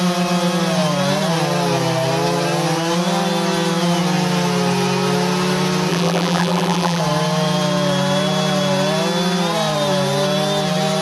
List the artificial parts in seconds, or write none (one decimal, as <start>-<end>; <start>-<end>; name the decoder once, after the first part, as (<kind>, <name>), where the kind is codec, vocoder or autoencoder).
5.9-7.0 (vocoder, BigVGAN v2)